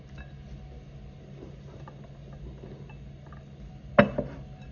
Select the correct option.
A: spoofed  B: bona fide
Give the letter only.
B